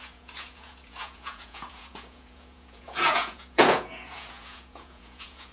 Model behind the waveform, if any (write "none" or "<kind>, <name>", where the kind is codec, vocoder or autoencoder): vocoder, Vocos